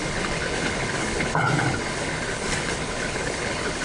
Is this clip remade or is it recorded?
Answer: remade